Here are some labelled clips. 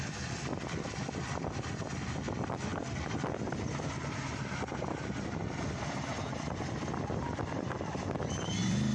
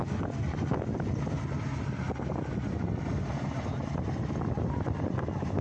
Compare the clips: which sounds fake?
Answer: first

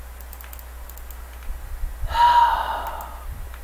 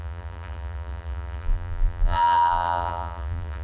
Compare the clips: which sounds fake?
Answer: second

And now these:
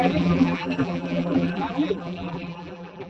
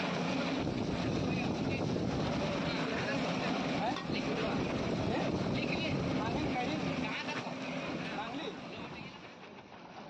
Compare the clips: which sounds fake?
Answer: first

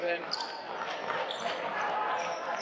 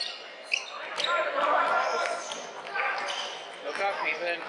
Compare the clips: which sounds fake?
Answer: first